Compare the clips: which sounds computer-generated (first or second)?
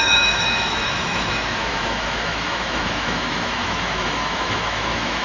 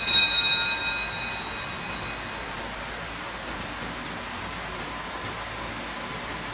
first